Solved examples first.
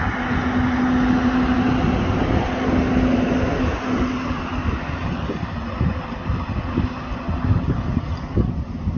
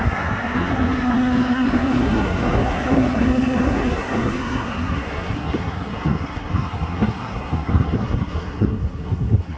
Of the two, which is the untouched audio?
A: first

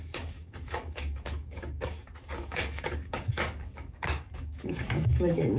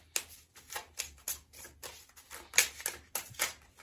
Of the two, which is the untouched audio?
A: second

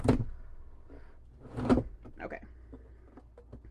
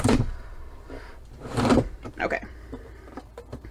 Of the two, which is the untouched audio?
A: first